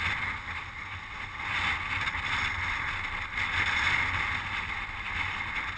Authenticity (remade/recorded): recorded